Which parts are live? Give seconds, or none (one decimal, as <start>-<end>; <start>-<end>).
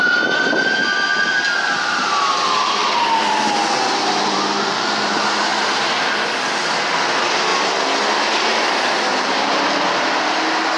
0.0-2.8; 4.6-10.8